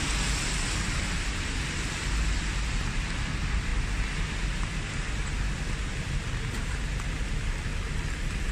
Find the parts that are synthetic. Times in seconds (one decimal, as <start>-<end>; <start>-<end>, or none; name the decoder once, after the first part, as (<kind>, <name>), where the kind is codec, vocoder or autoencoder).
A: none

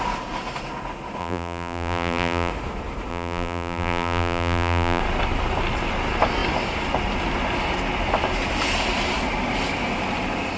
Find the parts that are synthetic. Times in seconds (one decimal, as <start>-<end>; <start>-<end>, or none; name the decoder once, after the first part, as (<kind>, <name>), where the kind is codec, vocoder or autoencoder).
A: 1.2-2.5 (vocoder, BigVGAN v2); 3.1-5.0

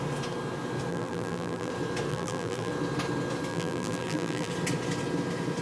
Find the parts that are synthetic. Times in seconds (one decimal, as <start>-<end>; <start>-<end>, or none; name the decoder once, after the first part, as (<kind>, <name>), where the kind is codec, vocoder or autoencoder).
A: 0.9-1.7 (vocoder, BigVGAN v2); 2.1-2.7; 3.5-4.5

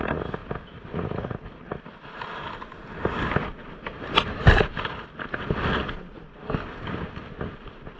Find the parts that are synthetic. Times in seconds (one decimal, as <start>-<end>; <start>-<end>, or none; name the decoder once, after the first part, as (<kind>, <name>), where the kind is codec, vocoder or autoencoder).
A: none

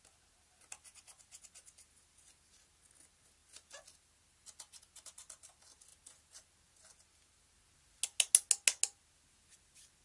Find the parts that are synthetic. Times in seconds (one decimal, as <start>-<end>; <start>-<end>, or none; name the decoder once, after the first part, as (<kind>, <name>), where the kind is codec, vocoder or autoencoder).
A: none

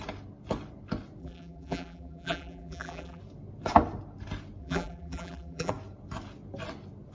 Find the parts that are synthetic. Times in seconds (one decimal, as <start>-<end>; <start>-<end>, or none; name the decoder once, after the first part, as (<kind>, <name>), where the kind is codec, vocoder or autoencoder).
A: 1.2-3.2 (vocoder, BigVGAN v2); 4.6-5.7